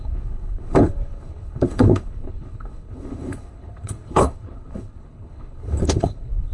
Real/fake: fake